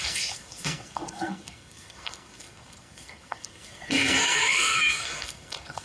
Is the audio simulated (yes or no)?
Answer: yes